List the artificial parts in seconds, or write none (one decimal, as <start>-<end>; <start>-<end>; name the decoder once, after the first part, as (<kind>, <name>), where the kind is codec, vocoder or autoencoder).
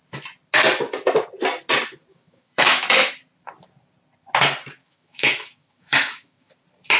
2.1-3.1 (autoencoder, DAC-VAE); 4.8-6.5